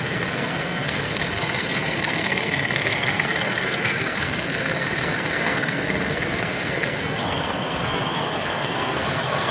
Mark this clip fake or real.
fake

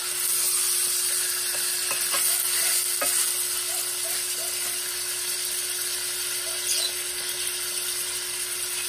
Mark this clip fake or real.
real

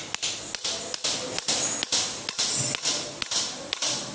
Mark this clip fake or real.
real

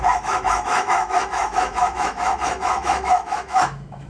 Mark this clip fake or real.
fake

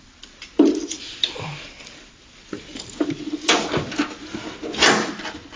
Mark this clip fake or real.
real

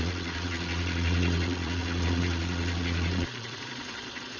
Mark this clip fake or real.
fake